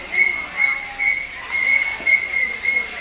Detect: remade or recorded recorded